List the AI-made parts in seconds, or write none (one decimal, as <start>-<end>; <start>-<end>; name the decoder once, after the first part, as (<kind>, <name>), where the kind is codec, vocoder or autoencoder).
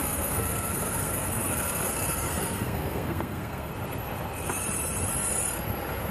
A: 0.0-3.7 (codec, SNAC)